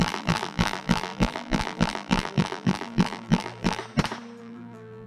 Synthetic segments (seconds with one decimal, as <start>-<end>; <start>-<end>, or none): 0.0-3.8; 4.4-5.1